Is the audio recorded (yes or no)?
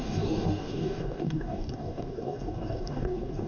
no